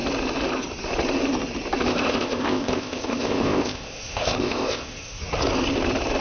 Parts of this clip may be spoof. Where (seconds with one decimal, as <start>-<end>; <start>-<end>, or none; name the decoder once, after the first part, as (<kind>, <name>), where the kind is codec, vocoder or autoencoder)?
1.9-5.2 (codec, ZipCodec)